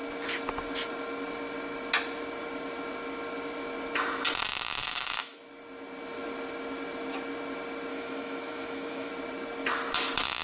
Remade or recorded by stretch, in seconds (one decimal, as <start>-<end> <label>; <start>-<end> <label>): 0.0-4.8 recorded; 4.8-5.4 remade; 5.4-7.9 recorded; 7.9-9.1 remade; 9.1-10.4 recorded